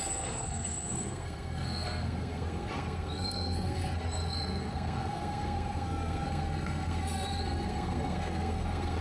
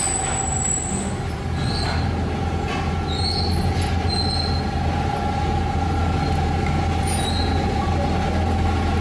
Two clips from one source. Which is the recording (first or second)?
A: second